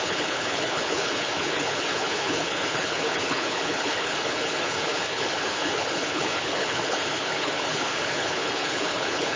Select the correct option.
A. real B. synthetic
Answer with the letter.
B